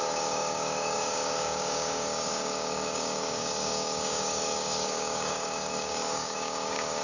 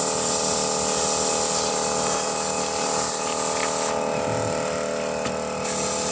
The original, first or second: second